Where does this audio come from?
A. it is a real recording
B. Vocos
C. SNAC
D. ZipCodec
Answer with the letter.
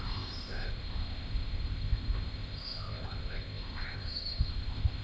D